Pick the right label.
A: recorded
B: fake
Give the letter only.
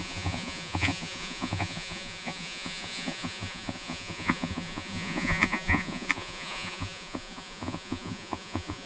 B